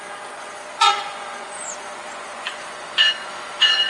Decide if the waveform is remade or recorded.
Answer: remade